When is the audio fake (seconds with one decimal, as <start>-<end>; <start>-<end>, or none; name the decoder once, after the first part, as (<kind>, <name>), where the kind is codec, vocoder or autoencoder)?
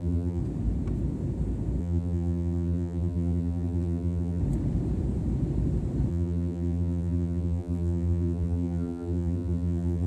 0.0-0.4 (vocoder, BigVGAN v2); 1.8-4.4; 6.1-10.1